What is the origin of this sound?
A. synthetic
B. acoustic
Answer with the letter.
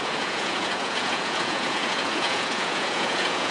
A